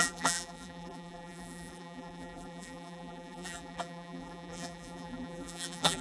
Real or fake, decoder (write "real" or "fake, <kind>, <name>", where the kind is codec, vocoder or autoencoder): fake, vocoder, BigVGAN v2